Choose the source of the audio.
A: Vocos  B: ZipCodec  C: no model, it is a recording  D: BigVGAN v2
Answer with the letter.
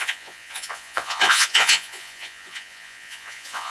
A